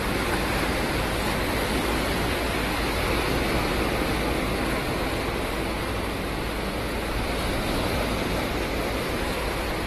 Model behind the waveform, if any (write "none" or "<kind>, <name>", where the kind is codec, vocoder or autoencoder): none